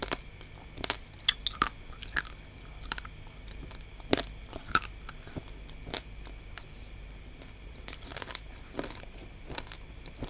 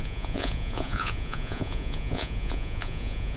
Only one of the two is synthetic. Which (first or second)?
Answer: second